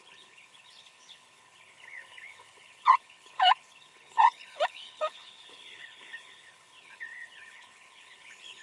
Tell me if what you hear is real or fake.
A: fake